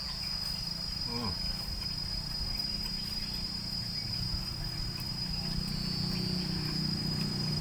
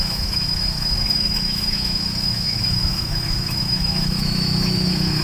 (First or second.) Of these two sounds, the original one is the first